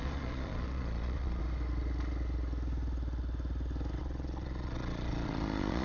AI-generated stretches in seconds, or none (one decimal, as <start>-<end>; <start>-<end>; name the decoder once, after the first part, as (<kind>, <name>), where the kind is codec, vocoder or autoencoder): 0.0-1.4 (vocoder, Vocos); 4.0-5.8

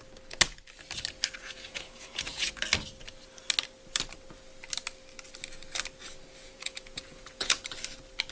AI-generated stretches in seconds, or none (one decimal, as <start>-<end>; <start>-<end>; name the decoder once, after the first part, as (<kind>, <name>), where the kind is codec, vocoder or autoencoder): 1.4-2.5 (vocoder, Vocos); 6.4-7.6

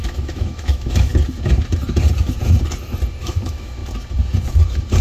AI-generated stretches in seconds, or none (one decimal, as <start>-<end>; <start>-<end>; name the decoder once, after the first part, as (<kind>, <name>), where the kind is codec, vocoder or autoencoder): 0.0-1.1 (autoencoder, DAC-VAE); 3.2-3.8

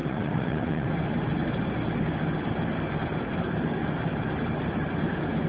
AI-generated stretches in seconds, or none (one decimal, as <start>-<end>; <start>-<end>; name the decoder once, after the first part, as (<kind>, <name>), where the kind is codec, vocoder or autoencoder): 0.0-0.9 (vocoder, Vocos)

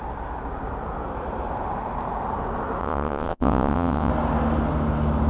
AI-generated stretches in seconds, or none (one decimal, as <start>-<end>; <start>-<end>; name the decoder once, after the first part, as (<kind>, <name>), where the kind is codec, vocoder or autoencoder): 2.8-4.1 (vocoder, WaveNeXt)

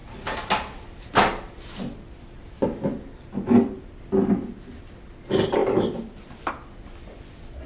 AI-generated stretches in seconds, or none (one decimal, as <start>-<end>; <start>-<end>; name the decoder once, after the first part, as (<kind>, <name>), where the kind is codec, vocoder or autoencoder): 5.6-6.5 (vocoder, BigVGAN v2)

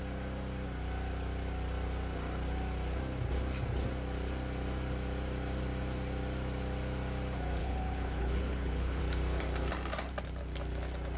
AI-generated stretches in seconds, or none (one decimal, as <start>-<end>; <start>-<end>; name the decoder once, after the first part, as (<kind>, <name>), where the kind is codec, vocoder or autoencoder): 7.6-9.0 (codec, HILCodec)